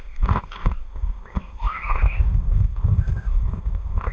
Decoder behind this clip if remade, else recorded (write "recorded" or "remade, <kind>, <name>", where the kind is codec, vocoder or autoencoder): remade, codec, ZipCodec